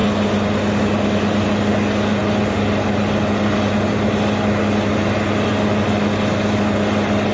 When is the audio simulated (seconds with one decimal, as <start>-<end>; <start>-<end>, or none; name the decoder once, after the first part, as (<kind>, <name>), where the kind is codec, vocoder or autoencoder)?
none